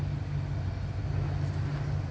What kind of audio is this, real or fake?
real